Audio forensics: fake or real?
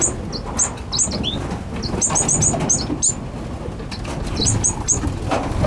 real